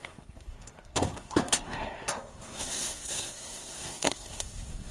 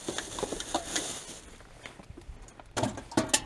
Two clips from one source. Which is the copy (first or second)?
first